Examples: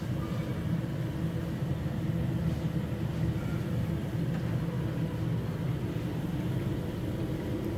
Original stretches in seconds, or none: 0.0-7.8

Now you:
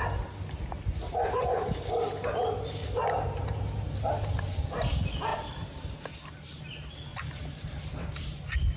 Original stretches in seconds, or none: 0.0-2.8; 4.1-5.3; 6.6-7.1; 7.8-8.8

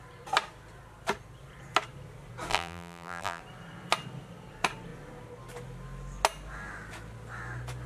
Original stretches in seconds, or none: 0.0-2.5; 3.4-7.9

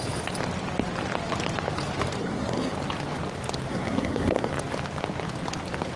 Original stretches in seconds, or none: 0.0-2.2; 2.7-3.7; 4.5-6.0

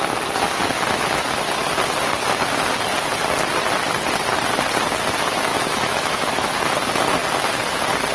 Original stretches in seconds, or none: 0.0-5.5; 6.6-8.1